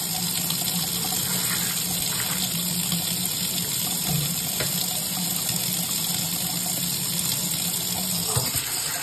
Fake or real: real